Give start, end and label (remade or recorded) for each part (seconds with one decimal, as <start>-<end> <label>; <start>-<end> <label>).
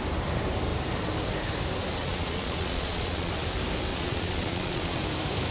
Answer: 0.0-2.0 recorded; 2.0-3.3 remade; 3.3-3.9 recorded; 3.9-5.0 remade; 5.0-5.5 recorded